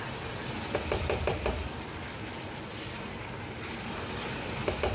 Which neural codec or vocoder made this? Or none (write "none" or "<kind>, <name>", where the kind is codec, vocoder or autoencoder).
none